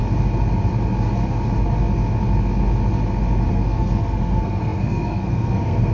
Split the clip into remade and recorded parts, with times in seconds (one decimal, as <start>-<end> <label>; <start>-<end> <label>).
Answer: 0.0-3.5 recorded; 3.5-5.9 remade